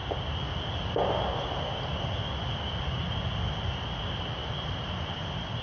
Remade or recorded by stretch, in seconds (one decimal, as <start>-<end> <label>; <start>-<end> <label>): 0.0-4.4 recorded; 4.4-5.6 remade